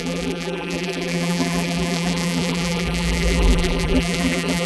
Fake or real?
fake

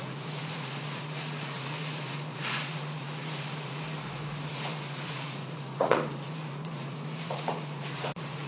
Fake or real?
fake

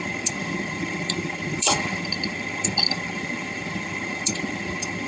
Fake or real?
fake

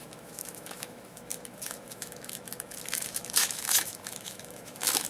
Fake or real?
fake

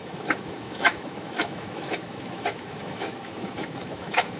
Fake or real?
fake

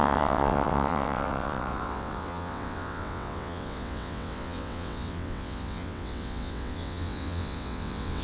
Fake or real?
fake